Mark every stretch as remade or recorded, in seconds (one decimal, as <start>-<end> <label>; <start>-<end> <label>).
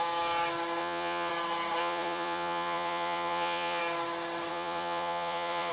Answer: 0.0-0.8 recorded; 0.8-1.3 remade; 1.3-1.8 recorded; 1.8-3.8 remade; 3.8-4.5 recorded; 4.5-5.7 remade